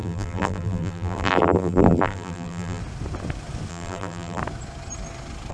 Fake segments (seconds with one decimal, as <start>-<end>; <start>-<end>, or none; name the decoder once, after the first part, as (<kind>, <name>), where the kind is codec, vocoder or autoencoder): 0.0-2.8 (vocoder, BigVGAN v2); 3.7-4.4